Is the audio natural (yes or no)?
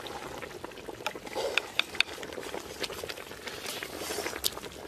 yes